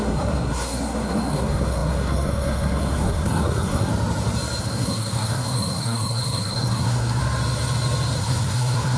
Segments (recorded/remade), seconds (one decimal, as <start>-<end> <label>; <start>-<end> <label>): 0.0-3.9 remade; 3.9-4.6 recorded; 4.6-7.2 remade; 7.2-8.2 recorded; 8.2-9.0 remade